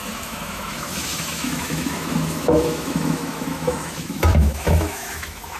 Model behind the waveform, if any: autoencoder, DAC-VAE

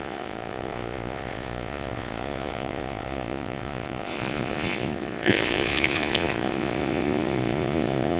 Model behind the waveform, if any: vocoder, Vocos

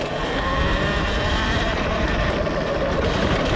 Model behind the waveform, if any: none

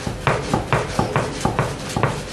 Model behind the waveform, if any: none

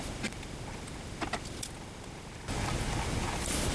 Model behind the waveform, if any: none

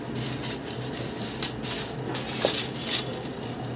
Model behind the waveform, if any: none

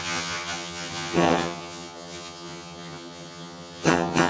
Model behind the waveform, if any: vocoder, HiFi-GAN